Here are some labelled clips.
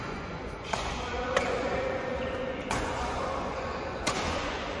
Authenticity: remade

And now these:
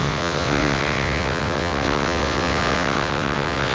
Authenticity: remade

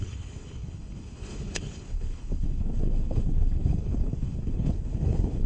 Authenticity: remade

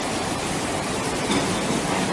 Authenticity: recorded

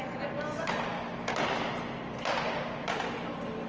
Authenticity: recorded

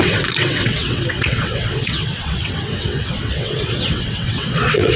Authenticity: remade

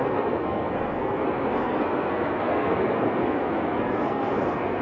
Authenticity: remade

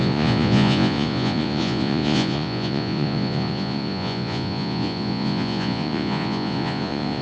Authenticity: remade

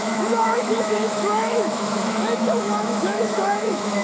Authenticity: remade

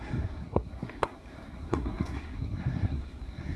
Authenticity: remade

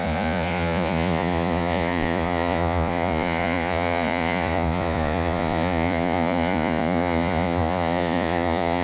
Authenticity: remade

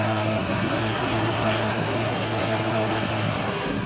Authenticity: remade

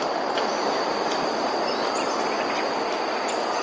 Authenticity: recorded